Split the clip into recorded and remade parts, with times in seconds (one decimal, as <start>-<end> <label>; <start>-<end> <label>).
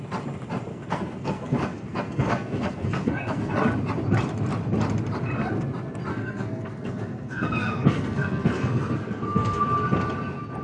0.0-0.7 recorded; 0.7-3.5 remade; 3.5-6.1 recorded; 6.1-9.6 remade; 9.6-10.6 recorded